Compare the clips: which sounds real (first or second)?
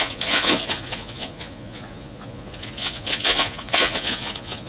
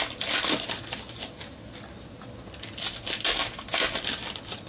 second